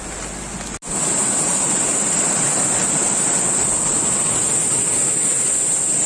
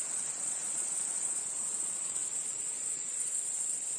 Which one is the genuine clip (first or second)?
first